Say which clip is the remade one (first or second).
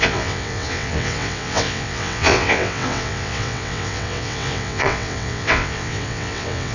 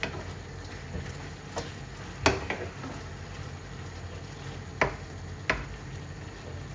first